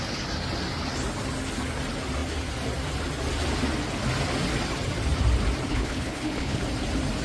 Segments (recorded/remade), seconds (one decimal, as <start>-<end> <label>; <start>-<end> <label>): 0.0-5.7 recorded; 5.7-6.6 remade; 6.6-7.2 recorded